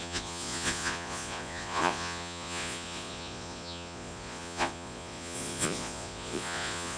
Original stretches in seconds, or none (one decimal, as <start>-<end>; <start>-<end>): none